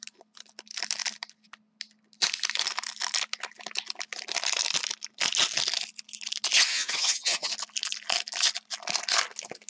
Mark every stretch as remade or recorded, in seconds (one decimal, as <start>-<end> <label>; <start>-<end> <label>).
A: 0.0-6.7 recorded; 6.7-7.5 remade; 7.5-9.7 recorded